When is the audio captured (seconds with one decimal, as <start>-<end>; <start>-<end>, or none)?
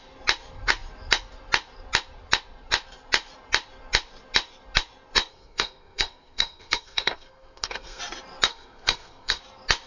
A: 0.0-5.3; 8.0-8.5; 9.4-9.9